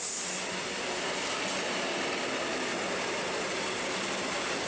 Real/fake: real